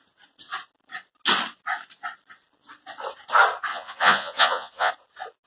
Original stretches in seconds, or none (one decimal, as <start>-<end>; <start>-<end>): 0.0-3.7; 4.9-5.5